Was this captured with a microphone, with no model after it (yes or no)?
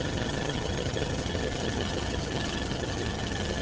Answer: no